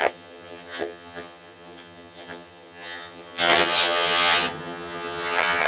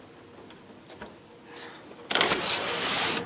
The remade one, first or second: first